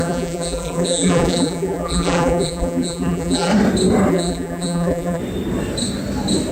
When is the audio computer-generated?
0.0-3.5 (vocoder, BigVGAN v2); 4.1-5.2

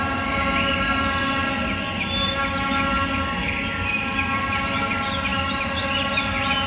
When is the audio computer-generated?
none

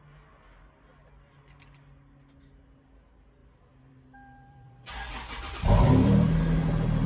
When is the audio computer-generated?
3.4-6.4 (vocoder, BigVGAN v2)